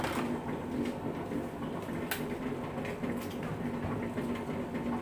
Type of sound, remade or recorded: recorded